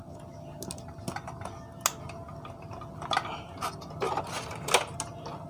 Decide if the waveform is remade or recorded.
recorded